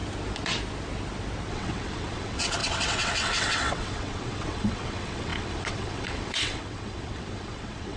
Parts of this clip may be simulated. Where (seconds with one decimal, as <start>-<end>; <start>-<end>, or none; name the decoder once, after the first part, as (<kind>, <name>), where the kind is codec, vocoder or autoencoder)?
1.5-8.0 (vocoder, WaveNeXt)